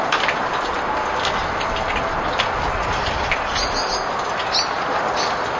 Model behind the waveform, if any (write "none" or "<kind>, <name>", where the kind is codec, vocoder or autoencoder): none